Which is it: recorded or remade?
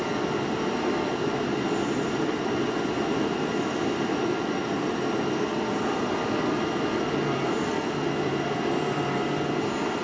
remade